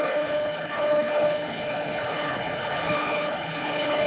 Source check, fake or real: fake